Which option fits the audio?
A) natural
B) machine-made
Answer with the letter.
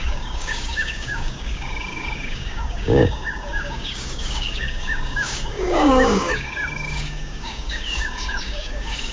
B